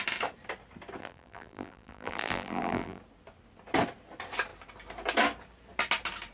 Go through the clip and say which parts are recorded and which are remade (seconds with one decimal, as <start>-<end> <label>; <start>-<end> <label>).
0.0-1.0 recorded; 1.0-3.0 remade; 3.0-6.3 recorded